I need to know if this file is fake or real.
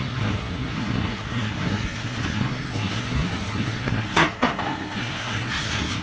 fake